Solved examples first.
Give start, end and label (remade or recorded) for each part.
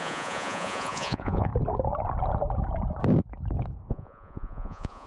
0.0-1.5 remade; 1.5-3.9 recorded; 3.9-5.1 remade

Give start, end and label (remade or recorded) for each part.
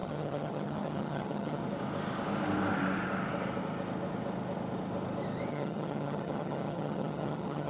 0.0-1.6 remade; 1.6-5.5 recorded; 5.5-7.7 remade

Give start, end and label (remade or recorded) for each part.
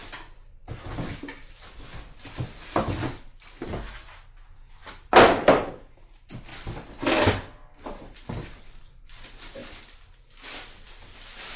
0.0-4.8 recorded; 4.8-5.7 remade; 5.7-9.6 recorded; 9.6-11.0 remade; 11.0-11.6 recorded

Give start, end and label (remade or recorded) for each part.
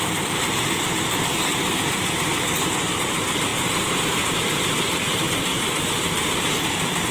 0.0-2.3 remade; 2.3-3.0 recorded; 3.0-5.5 remade; 5.5-6.4 recorded; 6.4-7.1 remade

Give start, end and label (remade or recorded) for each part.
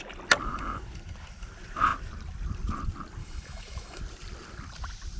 0.0-3.2 recorded; 3.2-4.0 remade; 4.0-5.2 recorded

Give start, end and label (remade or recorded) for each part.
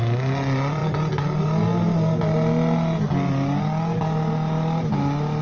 0.0-5.4 recorded